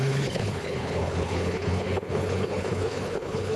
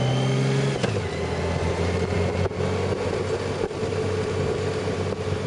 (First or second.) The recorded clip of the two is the second